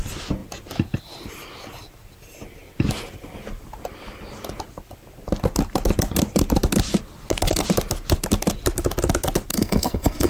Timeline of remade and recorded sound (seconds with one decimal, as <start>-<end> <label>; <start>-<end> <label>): 0.0-9.5 recorded; 9.5-10.3 remade